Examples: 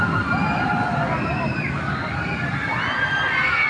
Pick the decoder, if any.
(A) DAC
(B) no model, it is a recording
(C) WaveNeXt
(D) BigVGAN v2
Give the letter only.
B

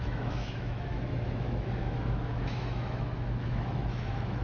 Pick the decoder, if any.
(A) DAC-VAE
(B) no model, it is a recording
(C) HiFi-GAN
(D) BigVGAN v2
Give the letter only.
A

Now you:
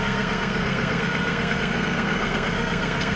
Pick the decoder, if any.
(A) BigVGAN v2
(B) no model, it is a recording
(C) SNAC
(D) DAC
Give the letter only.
C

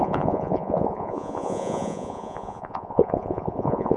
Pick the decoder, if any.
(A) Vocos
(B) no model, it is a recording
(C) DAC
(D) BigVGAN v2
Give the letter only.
A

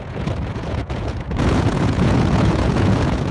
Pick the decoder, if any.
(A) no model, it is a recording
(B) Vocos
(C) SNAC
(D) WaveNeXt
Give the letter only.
B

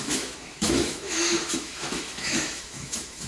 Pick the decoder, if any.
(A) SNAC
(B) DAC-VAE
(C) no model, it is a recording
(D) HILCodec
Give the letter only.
B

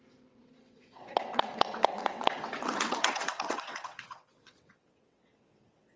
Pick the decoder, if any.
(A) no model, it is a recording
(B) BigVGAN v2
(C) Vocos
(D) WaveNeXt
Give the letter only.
D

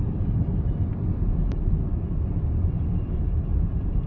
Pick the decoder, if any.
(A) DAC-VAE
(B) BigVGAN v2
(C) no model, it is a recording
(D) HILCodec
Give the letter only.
B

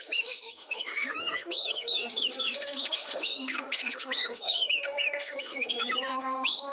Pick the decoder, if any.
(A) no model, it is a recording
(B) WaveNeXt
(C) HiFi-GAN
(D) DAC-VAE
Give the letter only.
D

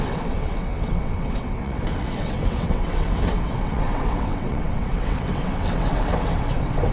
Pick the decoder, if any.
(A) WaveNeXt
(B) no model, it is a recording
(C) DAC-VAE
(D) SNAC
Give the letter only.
A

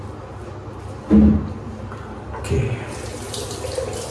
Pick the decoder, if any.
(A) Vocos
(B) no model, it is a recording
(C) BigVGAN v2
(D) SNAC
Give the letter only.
B